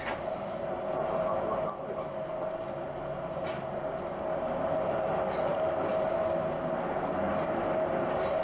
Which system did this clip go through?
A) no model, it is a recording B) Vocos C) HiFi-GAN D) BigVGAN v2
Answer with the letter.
A